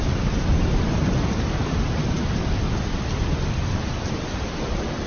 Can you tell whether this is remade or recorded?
remade